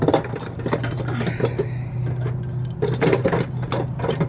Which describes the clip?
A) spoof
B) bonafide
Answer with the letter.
B